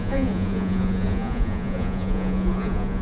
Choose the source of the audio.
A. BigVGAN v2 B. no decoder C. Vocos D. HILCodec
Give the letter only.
C